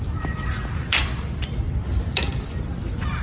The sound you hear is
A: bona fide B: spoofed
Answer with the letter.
B